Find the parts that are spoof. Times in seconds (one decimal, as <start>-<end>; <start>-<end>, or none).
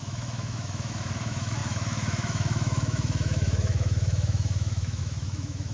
0.0-5.7